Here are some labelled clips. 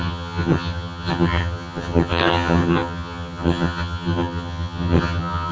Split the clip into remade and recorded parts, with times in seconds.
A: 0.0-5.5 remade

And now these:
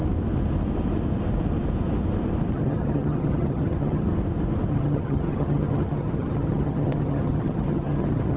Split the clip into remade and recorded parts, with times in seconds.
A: 0.0-2.5 recorded; 2.5-4.1 remade; 4.1-4.7 recorded; 4.7-8.4 remade

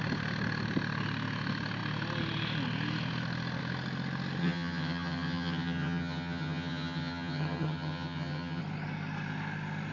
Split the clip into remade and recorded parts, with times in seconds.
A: 0.0-4.4 recorded; 4.4-8.6 remade; 8.6-9.9 recorded

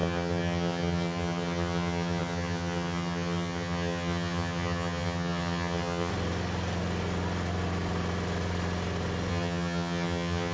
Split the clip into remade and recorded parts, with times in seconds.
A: 0.0-6.1 remade; 6.1-9.3 recorded; 9.3-10.5 remade

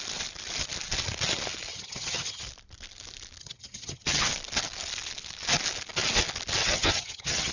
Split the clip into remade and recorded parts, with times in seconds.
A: 0.0-1.7 recorded; 1.7-2.4 remade; 2.4-3.4 recorded; 3.4-4.3 remade; 4.3-6.6 recorded; 6.6-7.5 remade

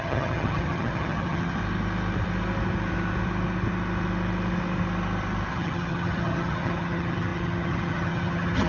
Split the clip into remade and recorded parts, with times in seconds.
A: 0.0-1.6 remade; 1.6-5.5 recorded; 5.5-8.7 remade

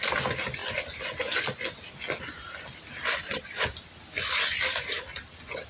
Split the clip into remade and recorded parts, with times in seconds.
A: 0.0-5.7 recorded